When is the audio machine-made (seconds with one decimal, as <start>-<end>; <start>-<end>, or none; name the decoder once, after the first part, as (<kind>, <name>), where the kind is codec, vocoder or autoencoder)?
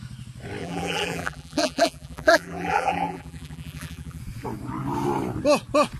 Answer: 0.6-4.2 (vocoder, BigVGAN v2)